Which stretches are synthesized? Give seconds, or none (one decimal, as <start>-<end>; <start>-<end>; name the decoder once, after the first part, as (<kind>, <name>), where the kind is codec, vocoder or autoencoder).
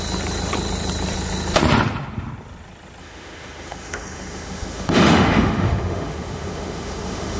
3.0-7.4 (autoencoder, DAC-VAE)